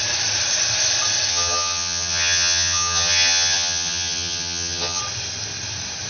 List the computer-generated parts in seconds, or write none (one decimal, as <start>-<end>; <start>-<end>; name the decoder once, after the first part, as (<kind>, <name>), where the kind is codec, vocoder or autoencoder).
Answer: 1.3-5.0 (vocoder, HiFi-GAN)